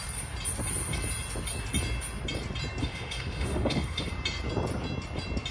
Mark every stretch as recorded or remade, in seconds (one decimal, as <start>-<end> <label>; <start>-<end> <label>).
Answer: 0.0-2.8 recorded; 2.8-4.1 remade; 4.1-5.5 recorded